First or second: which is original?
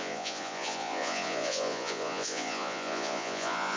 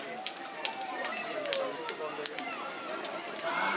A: second